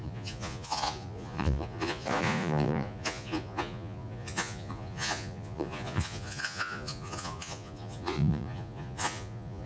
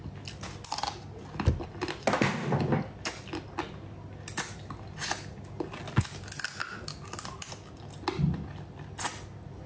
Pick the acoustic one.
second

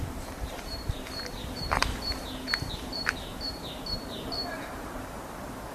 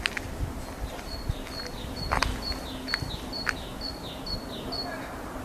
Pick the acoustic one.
second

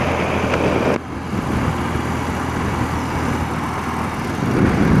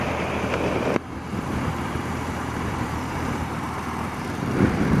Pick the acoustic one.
first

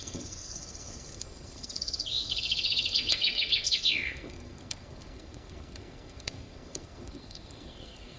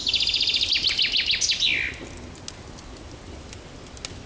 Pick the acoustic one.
second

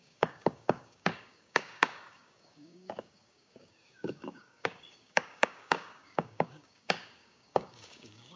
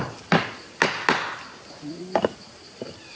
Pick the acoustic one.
second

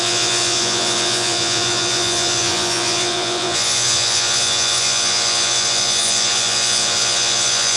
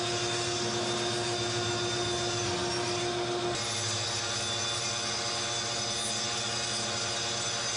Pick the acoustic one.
second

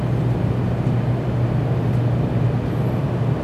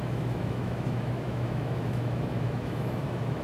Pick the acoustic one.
first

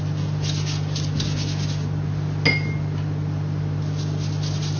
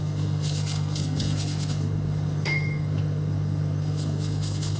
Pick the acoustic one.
first